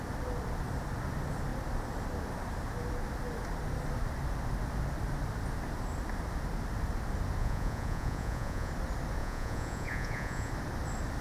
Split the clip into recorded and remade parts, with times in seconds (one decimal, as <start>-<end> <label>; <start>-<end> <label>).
0.0-7.4 recorded; 7.4-8.7 remade; 8.7-9.2 recorded; 9.2-10.5 remade; 10.5-11.2 recorded